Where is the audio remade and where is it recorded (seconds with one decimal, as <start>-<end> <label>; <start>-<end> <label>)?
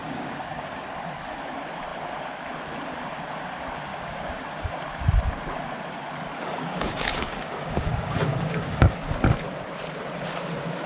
0.0-0.9 remade; 0.9-3.9 recorded; 3.9-4.7 remade; 4.7-6.3 recorded; 6.3-8.9 remade; 8.9-10.9 recorded